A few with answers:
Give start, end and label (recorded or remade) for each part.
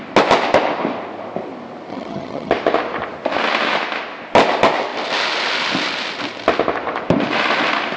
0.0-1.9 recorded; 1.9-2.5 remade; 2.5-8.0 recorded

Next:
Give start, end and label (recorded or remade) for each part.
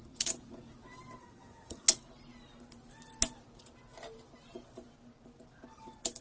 0.0-1.2 recorded; 1.2-1.9 remade; 1.9-6.2 recorded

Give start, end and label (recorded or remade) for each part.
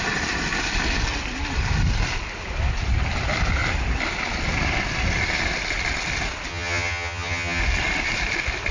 0.0-6.5 recorded; 6.5-7.6 remade; 7.6-8.7 recorded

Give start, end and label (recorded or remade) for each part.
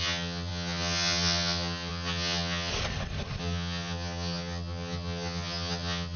0.0-2.7 remade; 2.7-3.4 recorded; 3.4-6.2 remade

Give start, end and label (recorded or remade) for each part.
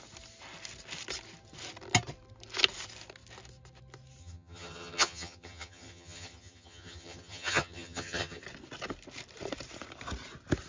0.0-4.2 recorded; 4.2-8.4 remade; 8.4-10.7 recorded